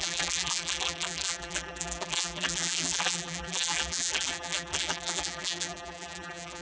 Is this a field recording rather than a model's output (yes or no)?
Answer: no